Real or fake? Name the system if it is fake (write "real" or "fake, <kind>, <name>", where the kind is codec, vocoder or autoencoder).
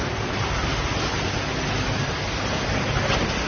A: real